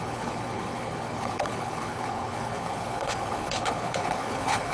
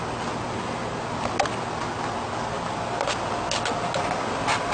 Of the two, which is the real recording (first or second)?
second